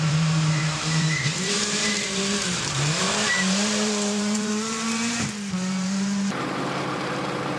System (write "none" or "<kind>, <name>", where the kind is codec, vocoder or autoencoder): vocoder, BigVGAN v2